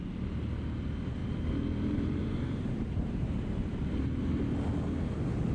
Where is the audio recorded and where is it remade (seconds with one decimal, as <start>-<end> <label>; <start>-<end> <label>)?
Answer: 0.0-1.2 recorded; 1.2-4.3 remade; 4.3-5.5 recorded